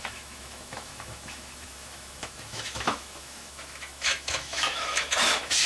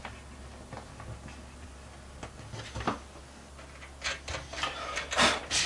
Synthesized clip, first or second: first